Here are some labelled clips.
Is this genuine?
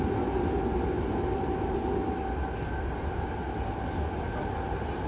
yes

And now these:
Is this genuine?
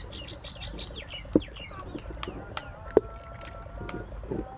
yes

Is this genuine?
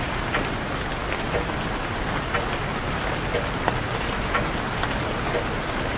yes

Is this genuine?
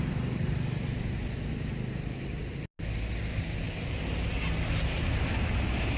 yes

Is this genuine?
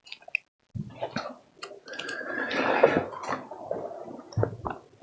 yes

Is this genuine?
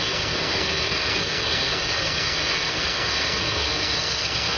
no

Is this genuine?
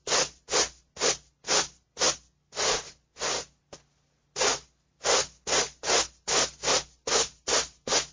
yes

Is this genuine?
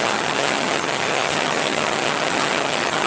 no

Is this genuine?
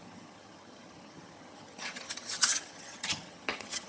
no